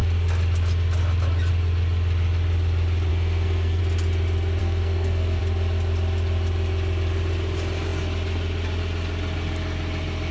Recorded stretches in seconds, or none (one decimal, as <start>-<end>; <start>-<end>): 0.0-3.1; 3.8-4.6; 5.4-10.3